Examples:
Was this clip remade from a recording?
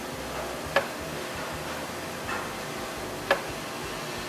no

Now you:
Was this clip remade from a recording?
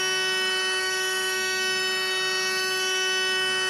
yes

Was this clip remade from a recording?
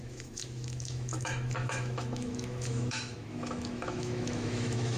yes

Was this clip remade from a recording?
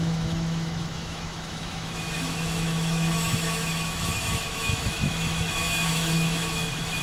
yes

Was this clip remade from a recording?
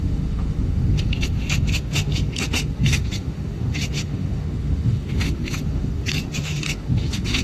yes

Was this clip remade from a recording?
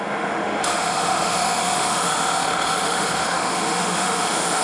yes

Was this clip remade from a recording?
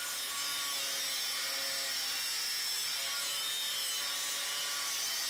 no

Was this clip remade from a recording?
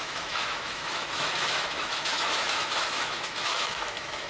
yes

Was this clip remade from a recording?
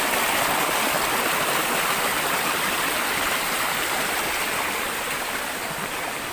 no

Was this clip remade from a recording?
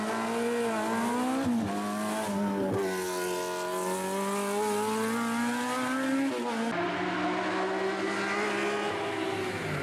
no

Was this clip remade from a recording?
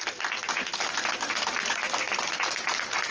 no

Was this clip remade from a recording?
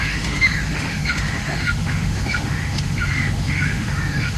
yes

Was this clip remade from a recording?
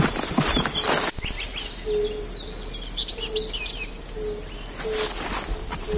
no